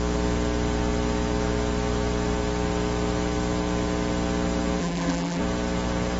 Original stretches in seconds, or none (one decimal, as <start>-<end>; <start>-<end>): 0.0-4.8; 5.4-6.2